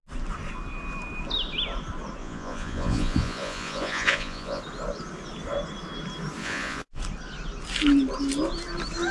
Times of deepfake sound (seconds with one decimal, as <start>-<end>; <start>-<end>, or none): 2.2-4.6; 6.4-7.0